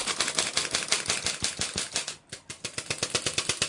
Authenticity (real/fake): real